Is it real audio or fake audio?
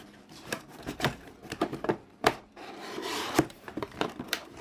fake